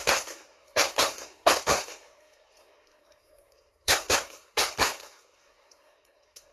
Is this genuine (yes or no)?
no